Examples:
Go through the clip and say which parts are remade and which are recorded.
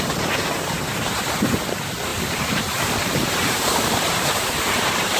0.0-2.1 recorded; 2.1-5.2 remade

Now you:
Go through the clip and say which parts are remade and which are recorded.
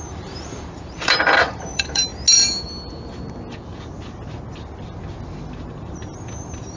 0.0-2.1 remade; 2.1-5.6 recorded; 5.6-6.8 remade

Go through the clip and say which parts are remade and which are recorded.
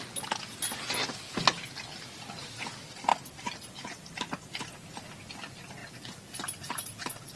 0.0-5.8 recorded; 5.8-7.4 remade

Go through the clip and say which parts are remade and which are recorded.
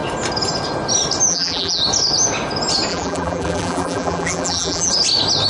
0.0-1.3 recorded; 1.3-1.8 remade; 1.8-2.9 recorded; 2.9-4.9 remade; 4.9-5.5 recorded